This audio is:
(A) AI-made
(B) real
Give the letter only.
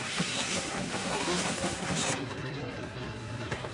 A